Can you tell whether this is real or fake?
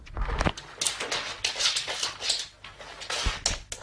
real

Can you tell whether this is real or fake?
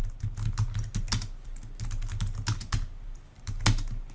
real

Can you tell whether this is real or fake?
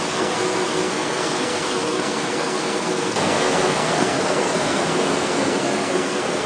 fake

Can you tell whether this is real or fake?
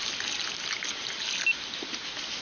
real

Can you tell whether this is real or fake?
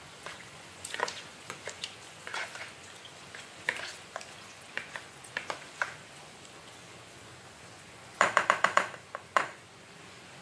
fake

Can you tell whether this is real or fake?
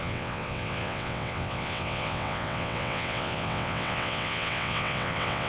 fake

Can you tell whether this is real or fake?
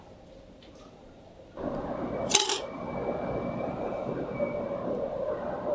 real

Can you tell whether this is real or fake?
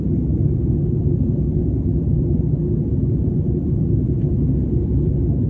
real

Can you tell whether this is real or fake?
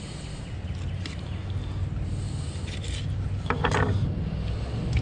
real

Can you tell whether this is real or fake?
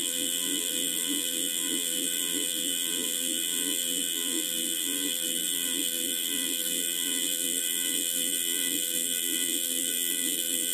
fake